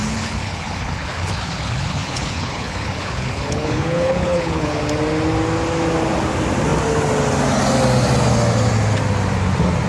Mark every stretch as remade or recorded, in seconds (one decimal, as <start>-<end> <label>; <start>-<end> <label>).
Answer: 0.0-4.8 remade; 4.8-9.9 recorded